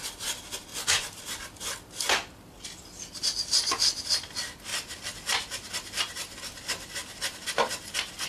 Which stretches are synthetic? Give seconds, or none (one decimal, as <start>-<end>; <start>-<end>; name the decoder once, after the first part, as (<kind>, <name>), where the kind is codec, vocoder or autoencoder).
none